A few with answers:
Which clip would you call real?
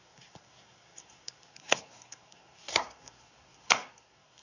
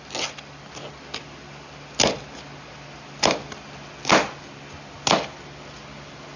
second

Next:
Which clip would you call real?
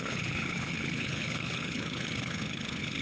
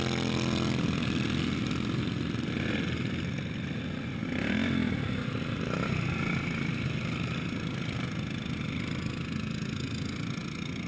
second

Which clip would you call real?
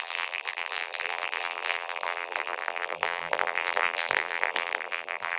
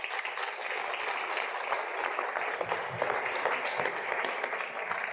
second